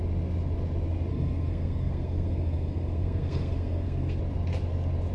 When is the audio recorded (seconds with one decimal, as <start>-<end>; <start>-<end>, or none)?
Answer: 0.0-1.1; 4.2-5.1